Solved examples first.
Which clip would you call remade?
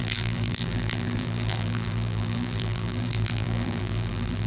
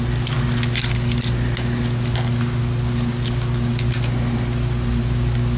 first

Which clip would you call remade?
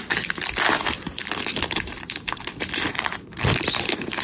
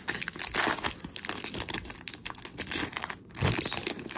first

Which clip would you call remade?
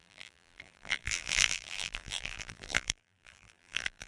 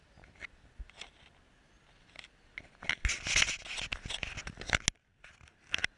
first